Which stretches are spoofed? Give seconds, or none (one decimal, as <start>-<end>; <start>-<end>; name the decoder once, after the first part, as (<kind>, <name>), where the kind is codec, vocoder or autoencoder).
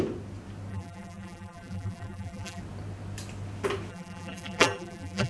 0.7-2.6 (vocoder, BigVGAN v2); 3.9-5.3